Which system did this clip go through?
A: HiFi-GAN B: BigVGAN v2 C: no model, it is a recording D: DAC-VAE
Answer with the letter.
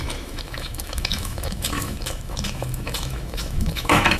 D